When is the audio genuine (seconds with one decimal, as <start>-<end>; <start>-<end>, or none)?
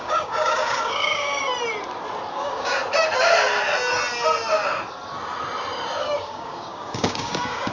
1.4-2.3; 2.8-6.0